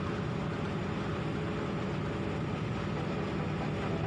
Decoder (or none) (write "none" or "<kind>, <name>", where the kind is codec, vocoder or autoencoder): none